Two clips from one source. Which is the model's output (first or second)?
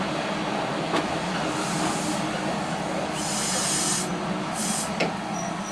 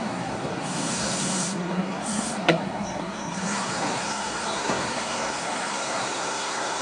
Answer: second